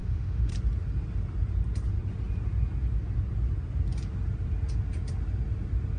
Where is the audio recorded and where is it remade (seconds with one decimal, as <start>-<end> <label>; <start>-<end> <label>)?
0.0-0.5 remade; 0.5-6.0 recorded